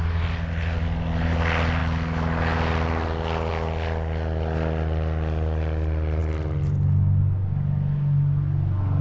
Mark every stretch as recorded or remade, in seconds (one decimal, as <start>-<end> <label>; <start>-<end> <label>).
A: 0.0-9.0 recorded

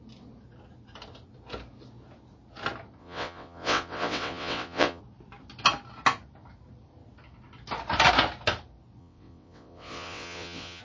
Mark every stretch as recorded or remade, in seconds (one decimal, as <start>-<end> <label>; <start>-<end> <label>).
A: 0.0-3.0 recorded; 3.0-5.0 remade; 5.0-9.0 recorded; 9.0-10.8 remade

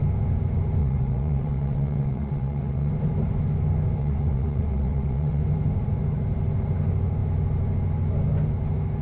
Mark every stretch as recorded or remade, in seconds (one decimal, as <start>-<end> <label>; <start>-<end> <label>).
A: 0.0-0.8 recorded; 0.8-2.9 remade; 2.9-4.0 recorded; 4.0-5.4 remade; 5.4-9.0 recorded